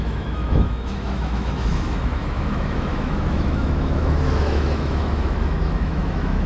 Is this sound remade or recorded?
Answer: remade